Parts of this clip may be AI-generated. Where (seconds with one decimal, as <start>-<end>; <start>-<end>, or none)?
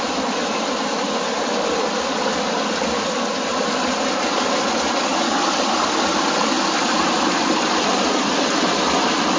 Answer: none